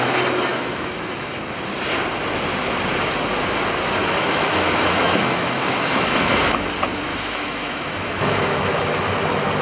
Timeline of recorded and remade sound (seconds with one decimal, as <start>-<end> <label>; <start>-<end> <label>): 0.0-0.5 recorded; 0.5-1.4 remade; 1.4-4.0 recorded; 4.0-6.4 remade; 6.4-7.1 recorded; 7.1-8.8 remade; 8.8-9.6 recorded